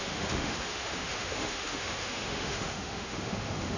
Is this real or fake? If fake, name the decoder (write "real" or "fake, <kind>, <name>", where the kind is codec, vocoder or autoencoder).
fake, autoencoder, DAC-VAE